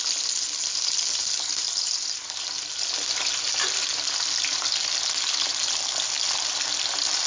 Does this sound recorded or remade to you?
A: recorded